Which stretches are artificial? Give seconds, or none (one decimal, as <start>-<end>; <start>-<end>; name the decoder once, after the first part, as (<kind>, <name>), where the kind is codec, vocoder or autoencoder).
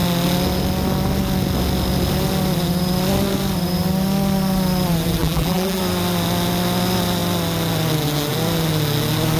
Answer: 5.2-5.8 (vocoder, BigVGAN v2)